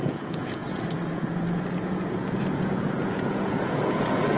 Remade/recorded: remade